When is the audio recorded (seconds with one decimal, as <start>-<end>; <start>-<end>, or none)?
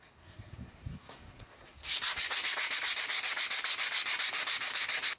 1.8-5.2